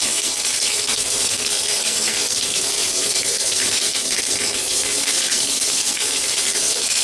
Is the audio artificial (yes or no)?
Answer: yes